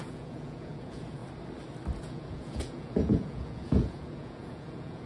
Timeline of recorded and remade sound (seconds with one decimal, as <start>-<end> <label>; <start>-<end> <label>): 0.0-1.2 remade; 1.2-2.0 recorded; 2.0-5.1 remade

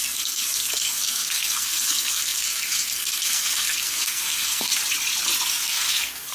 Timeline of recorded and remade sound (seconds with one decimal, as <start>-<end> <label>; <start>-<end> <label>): 0.0-4.7 remade; 4.7-5.5 recorded; 5.5-6.3 remade

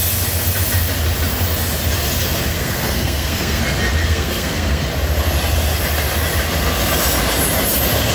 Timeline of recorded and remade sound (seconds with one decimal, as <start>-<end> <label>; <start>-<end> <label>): 0.0-2.5 recorded; 2.5-3.6 remade; 3.6-4.0 recorded; 4.0-4.8 remade; 4.8-8.1 recorded

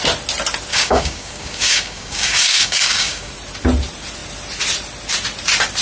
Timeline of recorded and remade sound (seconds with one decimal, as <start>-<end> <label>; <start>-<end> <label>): 0.0-0.7 recorded; 0.7-3.3 remade; 3.3-5.8 recorded

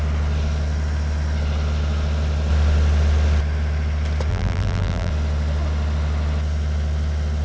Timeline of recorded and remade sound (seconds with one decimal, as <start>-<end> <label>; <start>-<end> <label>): 0.0-4.3 recorded; 4.3-5.1 remade; 5.1-7.4 recorded